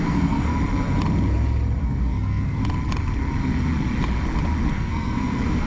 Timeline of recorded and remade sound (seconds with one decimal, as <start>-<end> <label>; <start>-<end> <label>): 0.0-0.5 remade; 0.5-1.8 recorded; 1.8-2.6 remade; 2.6-4.7 recorded; 4.7-5.7 remade